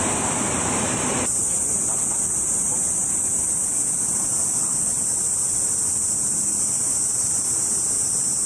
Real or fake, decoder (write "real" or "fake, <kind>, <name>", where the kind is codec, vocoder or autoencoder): real